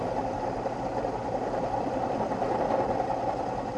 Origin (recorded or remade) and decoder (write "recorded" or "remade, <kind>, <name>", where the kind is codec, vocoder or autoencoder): remade, vocoder, BigVGAN v2